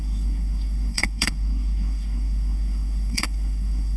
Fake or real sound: fake